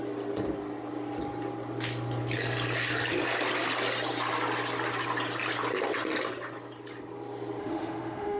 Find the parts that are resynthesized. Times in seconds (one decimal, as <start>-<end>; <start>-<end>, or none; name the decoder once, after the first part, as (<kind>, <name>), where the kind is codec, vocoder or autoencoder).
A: 7.6-8.4 (autoencoder, DAC-VAE)